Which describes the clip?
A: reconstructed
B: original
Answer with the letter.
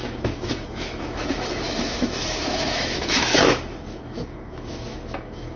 A